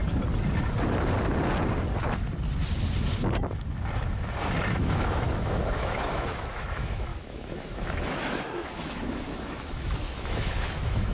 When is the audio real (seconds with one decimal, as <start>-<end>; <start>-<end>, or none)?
0.0-4.7